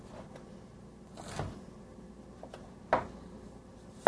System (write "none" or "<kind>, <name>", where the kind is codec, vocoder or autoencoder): none